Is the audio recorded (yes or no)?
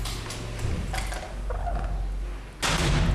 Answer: yes